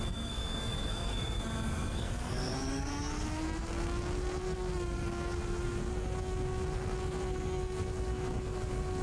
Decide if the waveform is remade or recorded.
remade